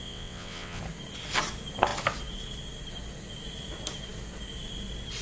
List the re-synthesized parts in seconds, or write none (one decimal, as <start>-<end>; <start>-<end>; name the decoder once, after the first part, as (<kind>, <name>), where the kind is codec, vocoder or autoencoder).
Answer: 0.0-0.8 (vocoder, WaveNeXt)